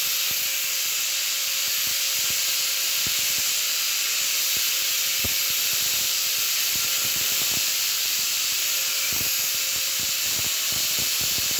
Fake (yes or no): no